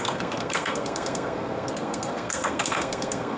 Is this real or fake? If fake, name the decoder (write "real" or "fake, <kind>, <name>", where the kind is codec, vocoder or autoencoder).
fake, codec, SNAC